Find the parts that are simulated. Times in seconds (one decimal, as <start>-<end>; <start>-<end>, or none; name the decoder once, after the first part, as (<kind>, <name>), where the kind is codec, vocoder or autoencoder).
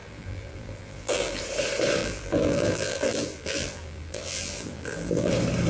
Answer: 0.0-1.4 (vocoder, BigVGAN v2); 2.0-5.3